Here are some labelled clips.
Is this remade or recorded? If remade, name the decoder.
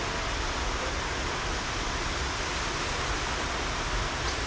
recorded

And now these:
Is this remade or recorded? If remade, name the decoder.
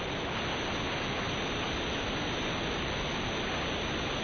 recorded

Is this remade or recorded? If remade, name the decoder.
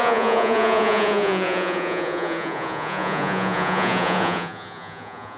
remade, vocoder, Vocos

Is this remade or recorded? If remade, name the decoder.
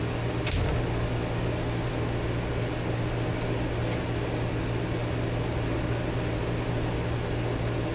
recorded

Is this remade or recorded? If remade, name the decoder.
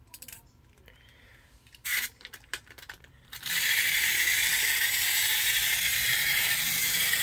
remade, vocoder, BigVGAN v2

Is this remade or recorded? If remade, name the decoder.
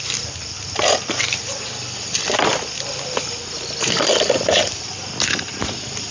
remade, vocoder, BigVGAN v2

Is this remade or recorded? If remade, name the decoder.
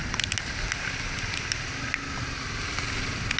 recorded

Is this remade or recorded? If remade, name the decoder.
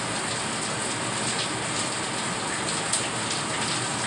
recorded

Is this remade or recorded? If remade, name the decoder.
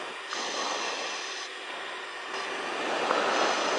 recorded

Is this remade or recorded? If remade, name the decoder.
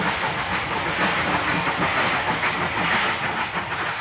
recorded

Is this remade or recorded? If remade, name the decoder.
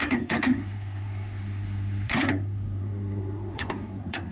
remade, codec, SNAC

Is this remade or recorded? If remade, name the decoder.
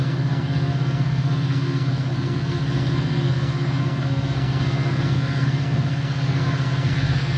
remade, codec, SNAC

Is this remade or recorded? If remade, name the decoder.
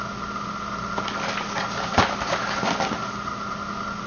recorded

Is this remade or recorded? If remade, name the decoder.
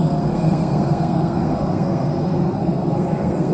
remade, codec, SNAC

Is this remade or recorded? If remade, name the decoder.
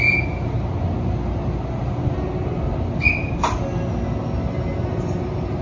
recorded